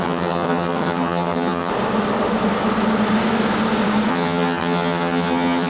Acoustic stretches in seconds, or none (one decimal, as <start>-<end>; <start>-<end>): 1.7-4.1